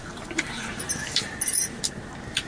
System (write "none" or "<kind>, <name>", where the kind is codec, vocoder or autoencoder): none